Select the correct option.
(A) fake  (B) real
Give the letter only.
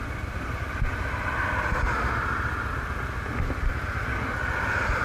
B